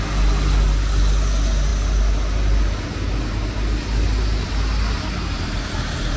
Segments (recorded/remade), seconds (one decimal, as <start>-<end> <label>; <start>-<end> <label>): 0.0-6.2 recorded